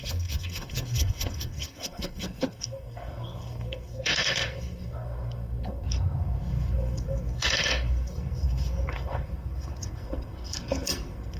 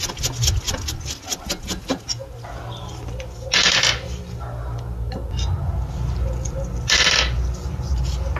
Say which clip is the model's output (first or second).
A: first